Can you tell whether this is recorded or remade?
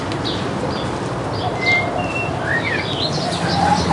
recorded